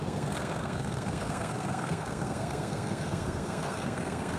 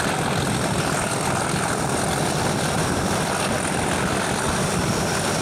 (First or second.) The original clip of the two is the second